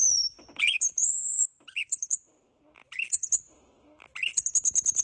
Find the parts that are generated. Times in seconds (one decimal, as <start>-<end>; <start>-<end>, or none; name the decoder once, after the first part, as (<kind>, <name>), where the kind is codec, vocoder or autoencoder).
none